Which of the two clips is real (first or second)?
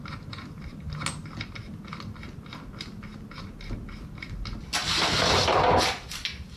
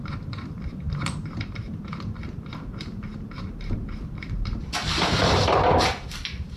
first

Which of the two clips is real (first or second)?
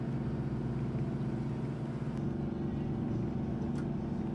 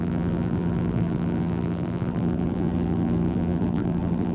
first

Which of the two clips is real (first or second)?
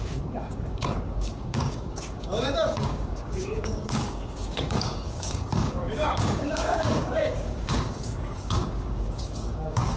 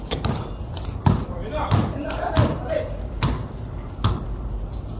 second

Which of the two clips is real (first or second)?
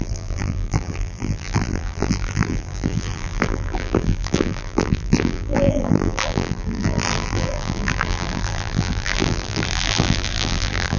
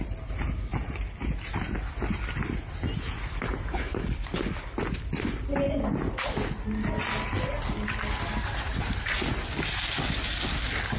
second